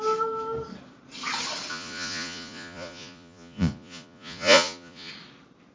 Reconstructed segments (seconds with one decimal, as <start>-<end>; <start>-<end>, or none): 1.7-5.1

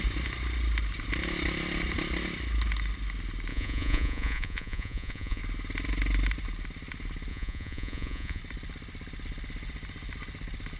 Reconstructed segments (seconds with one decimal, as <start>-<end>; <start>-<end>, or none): 3.5-5.4; 7.3-8.4